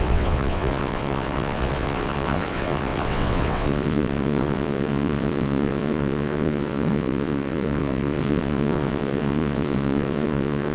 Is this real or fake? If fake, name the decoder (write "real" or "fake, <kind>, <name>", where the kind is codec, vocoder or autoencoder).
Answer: fake, vocoder, WaveNeXt